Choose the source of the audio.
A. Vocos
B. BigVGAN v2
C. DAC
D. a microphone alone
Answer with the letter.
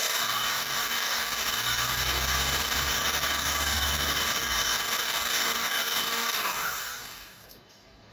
C